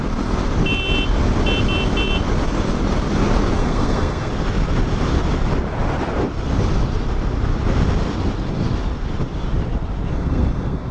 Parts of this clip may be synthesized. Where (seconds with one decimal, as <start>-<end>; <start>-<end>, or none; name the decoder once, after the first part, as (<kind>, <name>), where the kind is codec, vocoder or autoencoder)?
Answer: 3.6-4.3 (codec, SNAC); 10.1-10.9